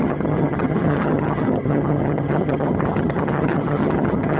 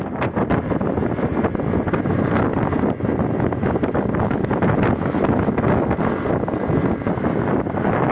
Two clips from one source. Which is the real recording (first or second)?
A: second